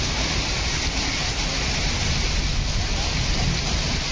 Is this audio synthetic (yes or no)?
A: no